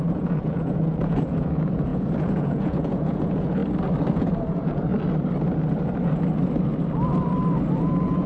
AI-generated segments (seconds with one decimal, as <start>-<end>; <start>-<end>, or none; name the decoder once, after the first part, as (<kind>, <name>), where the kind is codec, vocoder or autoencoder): 0.0-3.6 (vocoder, Vocos); 4.1-4.9; 7.8-8.3